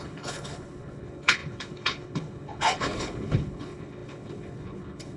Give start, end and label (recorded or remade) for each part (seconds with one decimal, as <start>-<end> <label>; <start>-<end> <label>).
0.0-5.2 remade